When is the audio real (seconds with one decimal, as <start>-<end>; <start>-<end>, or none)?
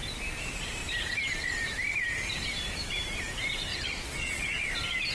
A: 0.0-3.7; 4.6-5.1